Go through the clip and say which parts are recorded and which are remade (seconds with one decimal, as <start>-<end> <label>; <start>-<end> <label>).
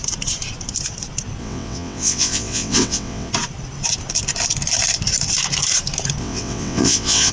0.0-1.4 recorded; 1.4-3.3 remade; 3.3-6.2 recorded; 6.2-7.3 remade